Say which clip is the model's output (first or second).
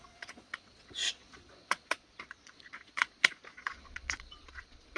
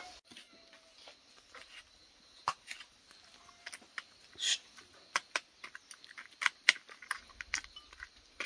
first